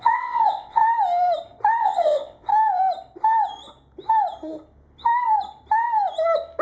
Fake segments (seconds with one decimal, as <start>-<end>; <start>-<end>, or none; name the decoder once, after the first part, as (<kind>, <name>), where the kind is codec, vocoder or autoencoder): 0.0-0.8 (vocoder, WaveNeXt); 1.8-2.5